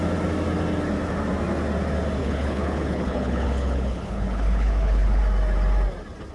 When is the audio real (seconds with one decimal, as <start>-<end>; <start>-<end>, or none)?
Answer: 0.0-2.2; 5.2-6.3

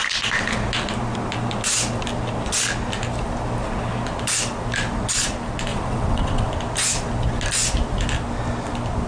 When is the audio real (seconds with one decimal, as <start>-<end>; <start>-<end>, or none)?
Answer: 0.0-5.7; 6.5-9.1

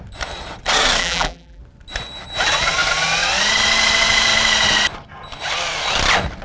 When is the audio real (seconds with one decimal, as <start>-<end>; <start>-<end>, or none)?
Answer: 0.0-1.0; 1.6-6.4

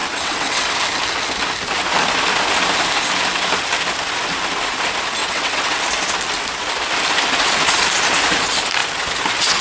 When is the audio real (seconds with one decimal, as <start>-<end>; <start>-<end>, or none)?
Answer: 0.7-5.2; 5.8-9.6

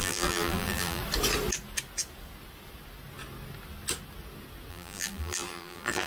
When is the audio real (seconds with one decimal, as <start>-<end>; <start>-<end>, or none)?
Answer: 1.0-4.7

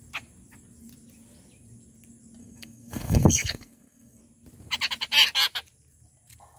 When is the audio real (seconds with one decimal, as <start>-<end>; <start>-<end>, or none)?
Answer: 0.0-2.4; 4.2-6.6

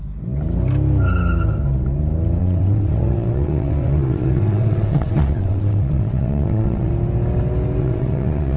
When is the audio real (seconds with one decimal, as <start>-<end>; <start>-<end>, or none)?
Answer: 0.0-2.4; 6.9-7.8